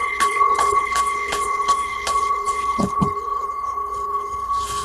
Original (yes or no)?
no